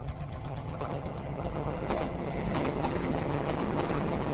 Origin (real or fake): fake